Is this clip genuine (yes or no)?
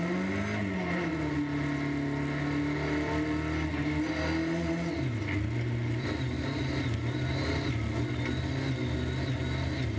yes